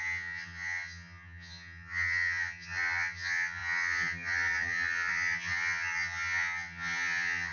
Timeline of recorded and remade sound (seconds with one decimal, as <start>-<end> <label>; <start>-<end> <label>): 0.0-7.5 remade